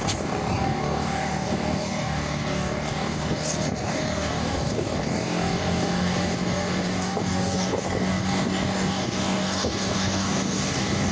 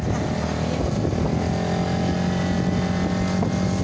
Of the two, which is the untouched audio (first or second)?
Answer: second